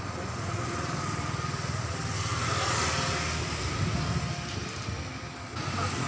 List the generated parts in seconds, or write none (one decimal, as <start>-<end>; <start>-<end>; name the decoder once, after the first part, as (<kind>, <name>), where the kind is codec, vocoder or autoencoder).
none